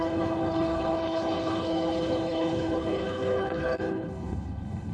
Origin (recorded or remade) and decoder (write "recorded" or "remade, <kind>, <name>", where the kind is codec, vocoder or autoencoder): remade, codec, HILCodec